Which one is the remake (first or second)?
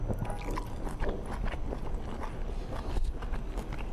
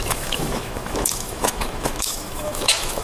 second